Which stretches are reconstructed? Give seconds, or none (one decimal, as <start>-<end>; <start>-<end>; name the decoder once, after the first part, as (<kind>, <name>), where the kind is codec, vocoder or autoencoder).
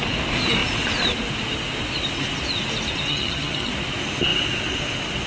3.1-3.7 (vocoder, HiFi-GAN)